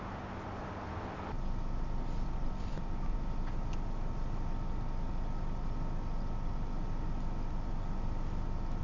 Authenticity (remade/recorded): recorded